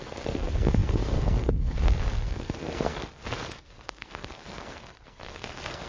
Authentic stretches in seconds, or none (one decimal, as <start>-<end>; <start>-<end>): none